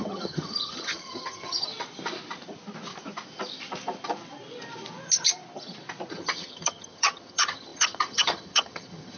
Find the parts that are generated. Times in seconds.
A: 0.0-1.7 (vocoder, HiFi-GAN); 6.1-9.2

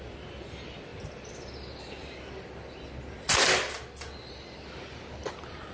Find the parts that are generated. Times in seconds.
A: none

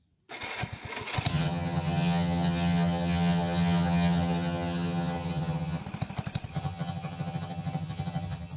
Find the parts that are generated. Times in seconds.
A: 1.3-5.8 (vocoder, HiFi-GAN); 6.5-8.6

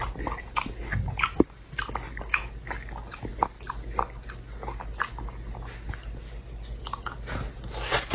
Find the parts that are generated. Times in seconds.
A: none

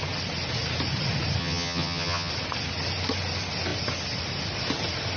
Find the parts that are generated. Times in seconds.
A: 1.4-2.3 (vocoder, HiFi-GAN)